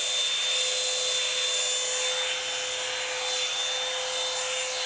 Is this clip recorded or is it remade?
recorded